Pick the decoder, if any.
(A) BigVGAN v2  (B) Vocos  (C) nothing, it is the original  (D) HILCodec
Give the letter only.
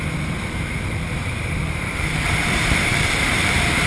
A